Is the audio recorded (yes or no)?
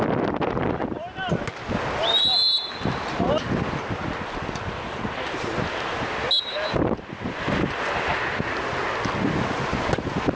yes